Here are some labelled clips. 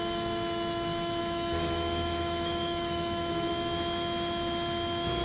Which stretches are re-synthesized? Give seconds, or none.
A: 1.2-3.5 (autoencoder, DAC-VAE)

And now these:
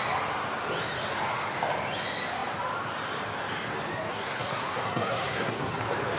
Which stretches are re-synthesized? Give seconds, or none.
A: 4.1-5.7 (codec, SNAC)

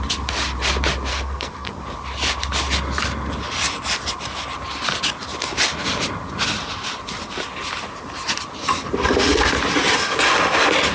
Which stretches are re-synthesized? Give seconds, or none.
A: 1.1-1.8 (codec, SNAC)

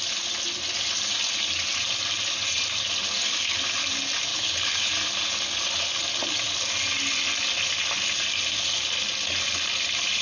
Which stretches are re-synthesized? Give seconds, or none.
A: 4.3-4.9 (codec, HILCodec)

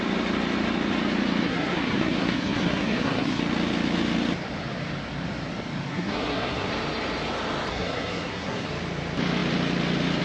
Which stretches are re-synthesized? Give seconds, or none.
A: 1.4-3.4 (codec, SNAC); 5.9-6.7; 7.7-8.7